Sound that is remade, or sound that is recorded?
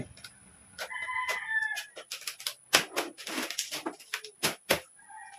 recorded